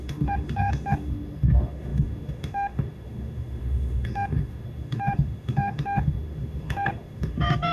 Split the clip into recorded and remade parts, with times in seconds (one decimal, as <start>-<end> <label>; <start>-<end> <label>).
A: 0.0-7.7 remade